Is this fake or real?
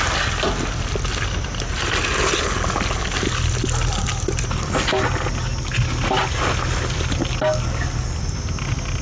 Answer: real